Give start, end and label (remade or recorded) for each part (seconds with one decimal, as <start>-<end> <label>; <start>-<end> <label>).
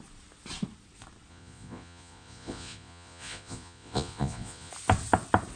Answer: 0.0-1.3 recorded; 1.3-4.7 remade; 4.7-5.6 recorded